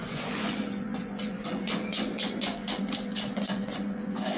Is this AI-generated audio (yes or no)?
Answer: yes